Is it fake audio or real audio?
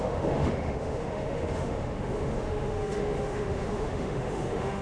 fake